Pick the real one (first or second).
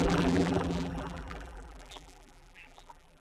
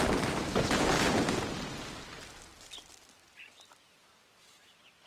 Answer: second